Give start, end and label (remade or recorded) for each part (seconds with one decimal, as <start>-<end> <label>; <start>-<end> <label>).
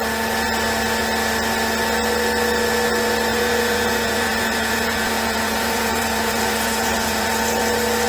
0.0-3.3 recorded; 3.3-7.6 remade; 7.6-8.1 recorded